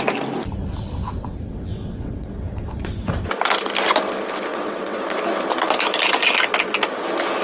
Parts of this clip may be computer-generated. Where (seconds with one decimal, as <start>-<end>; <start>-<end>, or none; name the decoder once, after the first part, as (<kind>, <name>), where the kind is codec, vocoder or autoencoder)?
1.0-3.1 (vocoder, WaveNeXt); 4.5-5.0